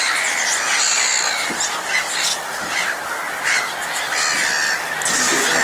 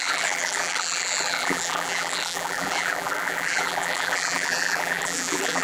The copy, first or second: second